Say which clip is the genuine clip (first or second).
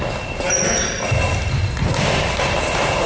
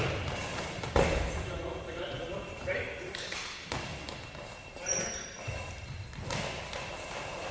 first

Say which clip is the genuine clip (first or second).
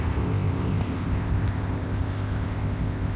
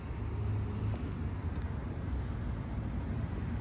second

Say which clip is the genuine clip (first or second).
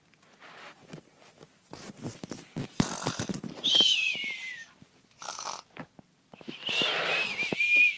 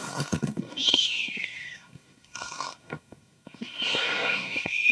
first